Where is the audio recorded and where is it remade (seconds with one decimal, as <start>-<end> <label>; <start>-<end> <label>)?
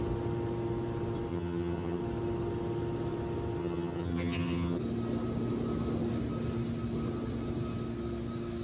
0.0-1.3 recorded; 1.3-2.0 remade; 2.0-3.6 recorded; 3.6-4.8 remade; 4.8-8.6 recorded